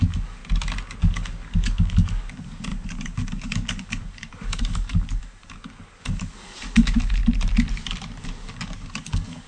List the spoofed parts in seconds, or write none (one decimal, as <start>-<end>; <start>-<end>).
0.0-0.4; 1.0-7.2; 8.2-9.5